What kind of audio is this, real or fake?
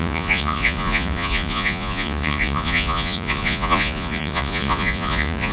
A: fake